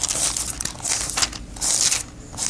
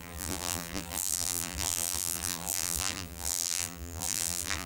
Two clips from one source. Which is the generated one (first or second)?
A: second